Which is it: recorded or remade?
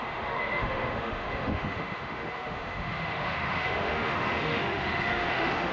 remade